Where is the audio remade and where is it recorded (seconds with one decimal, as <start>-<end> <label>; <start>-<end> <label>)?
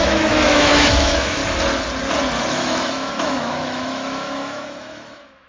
0.0-1.4 remade; 1.4-2.5 recorded; 2.5-5.5 remade